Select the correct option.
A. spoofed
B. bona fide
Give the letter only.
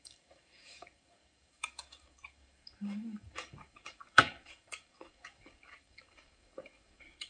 A